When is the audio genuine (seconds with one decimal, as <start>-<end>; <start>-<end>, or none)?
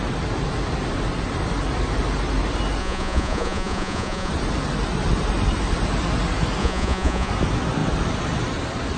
0.0-2.8; 4.3-6.6; 7.3-9.0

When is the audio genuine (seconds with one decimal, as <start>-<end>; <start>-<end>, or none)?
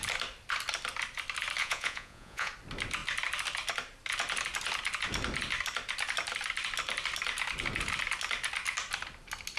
0.0-1.6; 2.5-9.6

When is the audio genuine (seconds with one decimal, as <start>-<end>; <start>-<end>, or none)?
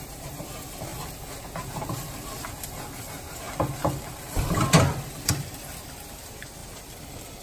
0.9-5.3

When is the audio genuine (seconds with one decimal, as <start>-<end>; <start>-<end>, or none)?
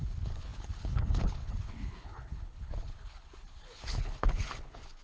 none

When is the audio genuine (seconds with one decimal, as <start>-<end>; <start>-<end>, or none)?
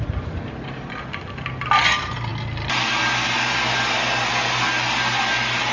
0.0-5.7